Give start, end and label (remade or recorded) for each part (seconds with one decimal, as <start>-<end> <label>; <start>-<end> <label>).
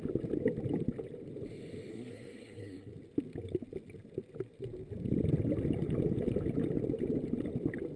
0.0-1.9 recorded; 1.9-2.9 remade; 2.9-8.0 recorded